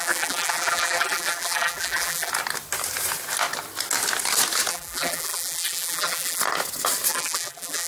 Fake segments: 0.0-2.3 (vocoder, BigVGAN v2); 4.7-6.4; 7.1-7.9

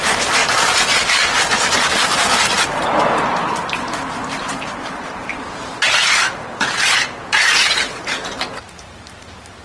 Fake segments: 0.0-0.4 (vocoder, BigVGAN v2); 4.4-9.6

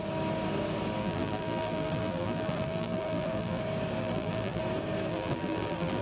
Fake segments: 1.0-3.6 (vocoder, BigVGAN v2); 4.0-4.6; 5.1-6.0

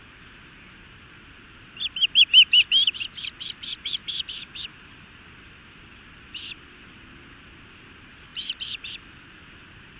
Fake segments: none

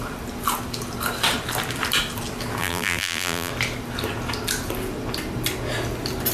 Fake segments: 2.6-3.5 (vocoder, BigVGAN v2)

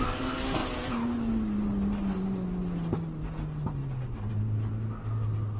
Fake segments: none

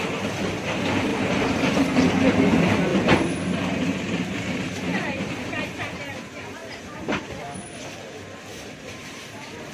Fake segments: 1.1-2.2 (vocoder, BigVGAN v2); 2.9-6.0; 6.6-7.2; 8.5-9.7